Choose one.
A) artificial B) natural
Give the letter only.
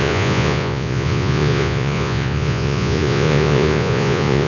A